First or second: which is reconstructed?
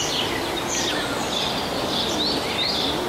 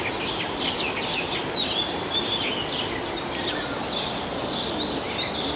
second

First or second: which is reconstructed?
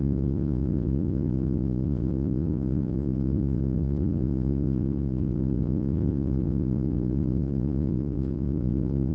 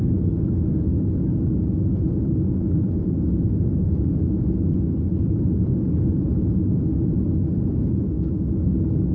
first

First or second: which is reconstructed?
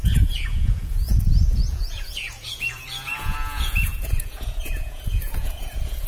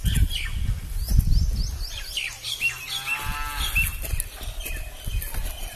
first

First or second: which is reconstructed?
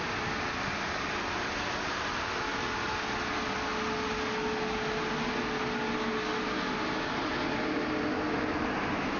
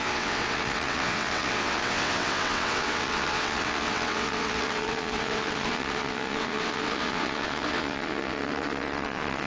second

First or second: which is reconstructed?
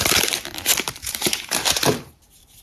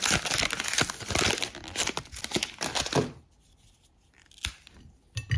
first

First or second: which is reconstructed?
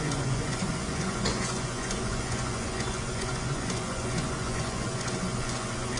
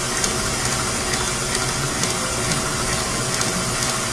first